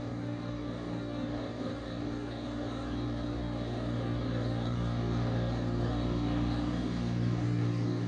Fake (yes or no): yes